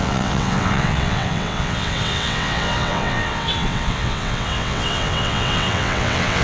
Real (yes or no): no